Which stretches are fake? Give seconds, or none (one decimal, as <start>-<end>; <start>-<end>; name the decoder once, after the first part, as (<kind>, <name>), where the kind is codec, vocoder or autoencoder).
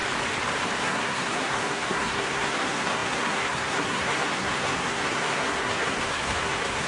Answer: 0.8-6.9 (codec, SNAC)